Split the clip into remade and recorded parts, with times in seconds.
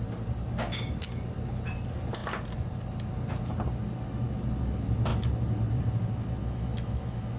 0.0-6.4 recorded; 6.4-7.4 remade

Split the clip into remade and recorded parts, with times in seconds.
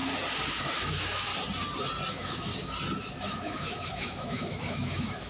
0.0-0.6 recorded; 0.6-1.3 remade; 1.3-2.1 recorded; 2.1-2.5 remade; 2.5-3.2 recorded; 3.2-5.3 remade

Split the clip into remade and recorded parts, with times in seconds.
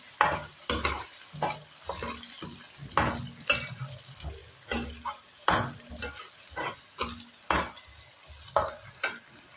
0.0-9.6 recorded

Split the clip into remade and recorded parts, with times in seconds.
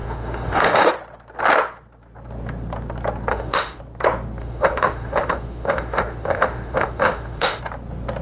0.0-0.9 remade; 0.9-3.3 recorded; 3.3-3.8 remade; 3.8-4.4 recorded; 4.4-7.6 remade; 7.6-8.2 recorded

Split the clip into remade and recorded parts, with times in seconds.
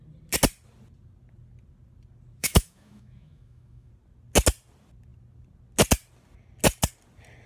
0.0-2.4 recorded; 2.4-3.9 remade; 3.9-7.5 recorded